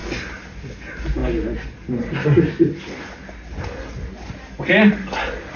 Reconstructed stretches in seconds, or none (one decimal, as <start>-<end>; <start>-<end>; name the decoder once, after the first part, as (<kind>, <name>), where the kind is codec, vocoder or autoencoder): none

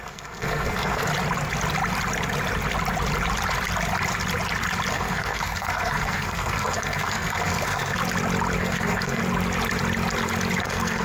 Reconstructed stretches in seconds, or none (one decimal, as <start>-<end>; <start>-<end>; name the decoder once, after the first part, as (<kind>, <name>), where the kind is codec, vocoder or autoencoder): 0.0-1.1 (codec, SNAC); 4.9-8.0; 8.6-9.2; 10.6-11.0